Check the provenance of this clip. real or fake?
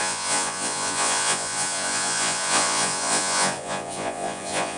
fake